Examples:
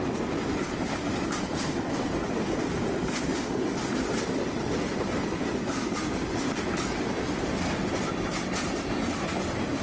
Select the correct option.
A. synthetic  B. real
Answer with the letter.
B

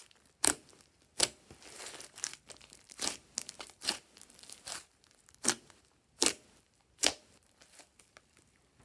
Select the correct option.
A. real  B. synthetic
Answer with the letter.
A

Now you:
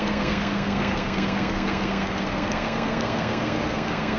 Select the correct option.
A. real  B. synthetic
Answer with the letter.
B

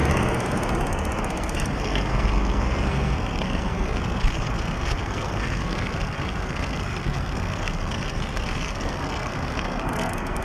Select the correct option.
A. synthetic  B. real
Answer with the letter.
A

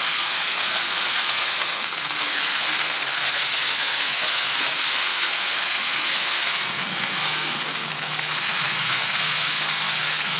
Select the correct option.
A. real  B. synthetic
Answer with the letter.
B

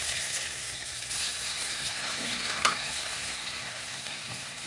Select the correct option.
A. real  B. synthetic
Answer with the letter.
B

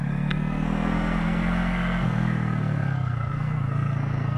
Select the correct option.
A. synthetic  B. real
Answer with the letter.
A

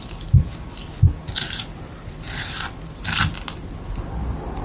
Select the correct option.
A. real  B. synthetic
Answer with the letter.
A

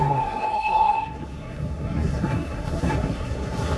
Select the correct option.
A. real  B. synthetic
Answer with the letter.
B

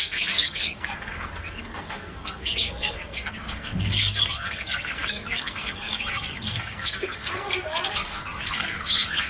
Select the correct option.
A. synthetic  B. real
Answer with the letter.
A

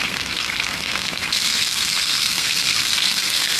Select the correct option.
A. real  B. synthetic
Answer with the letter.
B